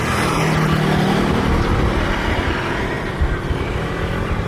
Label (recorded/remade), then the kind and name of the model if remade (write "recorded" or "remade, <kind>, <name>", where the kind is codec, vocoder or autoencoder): recorded